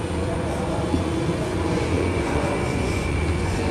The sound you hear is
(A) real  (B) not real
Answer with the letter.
B